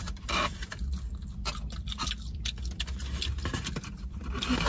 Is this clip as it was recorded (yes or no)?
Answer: no